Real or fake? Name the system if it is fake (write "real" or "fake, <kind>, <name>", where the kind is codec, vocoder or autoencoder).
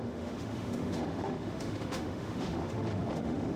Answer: fake, autoencoder, DAC-VAE